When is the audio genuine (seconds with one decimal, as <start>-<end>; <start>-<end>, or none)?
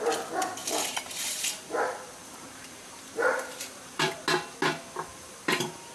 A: 0.0-0.6; 4.1-5.1